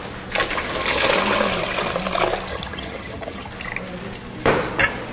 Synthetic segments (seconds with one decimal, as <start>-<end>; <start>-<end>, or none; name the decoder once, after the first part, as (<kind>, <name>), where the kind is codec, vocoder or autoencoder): 2.5-3.5 (vocoder, HiFi-GAN)